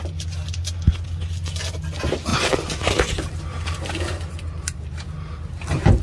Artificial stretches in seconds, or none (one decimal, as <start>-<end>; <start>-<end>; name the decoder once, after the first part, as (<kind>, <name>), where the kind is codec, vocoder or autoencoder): none